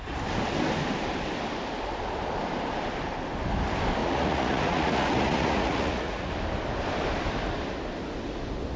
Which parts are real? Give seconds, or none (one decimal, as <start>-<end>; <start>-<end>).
0.0-4.0; 6.3-8.8